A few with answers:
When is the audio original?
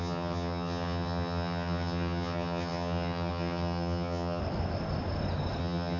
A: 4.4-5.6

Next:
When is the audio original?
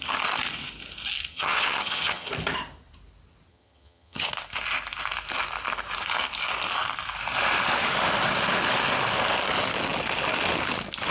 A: 0.0-1.3; 2.3-3.5; 4.3-11.1